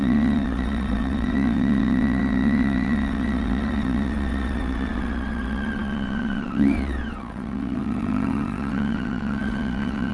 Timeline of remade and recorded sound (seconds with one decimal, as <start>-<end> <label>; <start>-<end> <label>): 0.0-10.1 remade